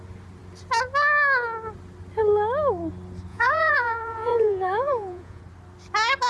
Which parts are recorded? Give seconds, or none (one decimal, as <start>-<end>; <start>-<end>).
0.0-3.3; 5.4-6.3